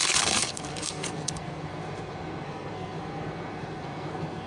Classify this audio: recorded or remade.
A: remade